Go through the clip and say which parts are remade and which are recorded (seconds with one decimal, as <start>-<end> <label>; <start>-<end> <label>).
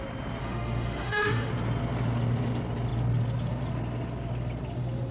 0.0-0.4 recorded; 0.4-1.5 remade; 1.5-5.1 recorded